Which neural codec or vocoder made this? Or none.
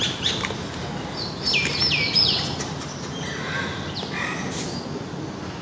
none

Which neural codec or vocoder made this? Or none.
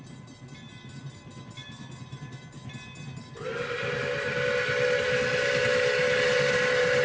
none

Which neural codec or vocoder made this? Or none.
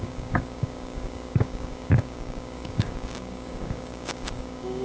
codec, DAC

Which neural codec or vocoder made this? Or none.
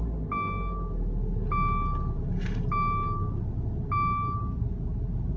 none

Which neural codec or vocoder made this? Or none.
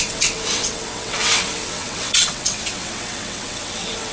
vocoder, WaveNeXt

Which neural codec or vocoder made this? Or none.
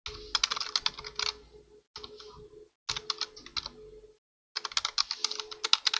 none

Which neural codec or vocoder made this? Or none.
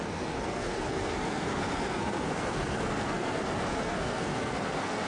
codec, SNAC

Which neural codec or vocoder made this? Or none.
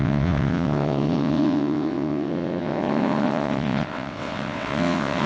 vocoder, WaveNeXt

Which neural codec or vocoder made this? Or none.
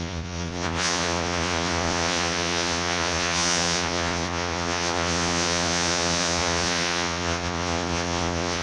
vocoder, Vocos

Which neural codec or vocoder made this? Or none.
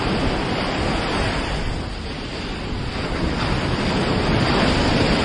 none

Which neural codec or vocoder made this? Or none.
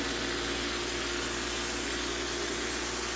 none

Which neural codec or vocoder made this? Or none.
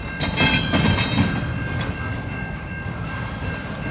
none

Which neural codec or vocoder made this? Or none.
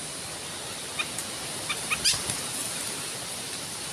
none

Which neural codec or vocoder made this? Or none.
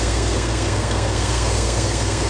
codec, SNAC